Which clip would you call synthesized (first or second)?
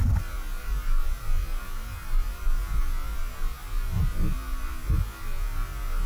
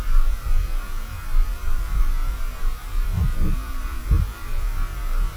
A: second